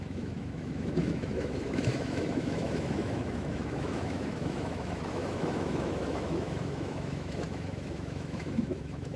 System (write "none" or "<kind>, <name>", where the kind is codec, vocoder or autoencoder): autoencoder, DAC-VAE